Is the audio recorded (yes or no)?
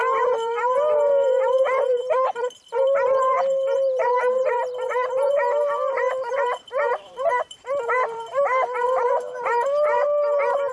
no